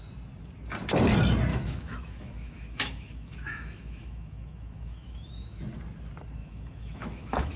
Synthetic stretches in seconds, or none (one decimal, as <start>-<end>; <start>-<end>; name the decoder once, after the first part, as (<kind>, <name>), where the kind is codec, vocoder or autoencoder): 1.5-5.6 (autoencoder, DAC-VAE); 6.4-7.6